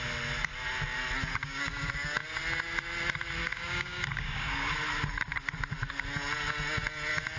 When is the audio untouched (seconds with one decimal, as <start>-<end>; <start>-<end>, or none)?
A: 0.0-1.3; 1.9-3.4; 4.7-7.4